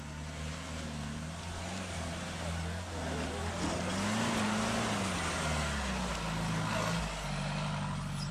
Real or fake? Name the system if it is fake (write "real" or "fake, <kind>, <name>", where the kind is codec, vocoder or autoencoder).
real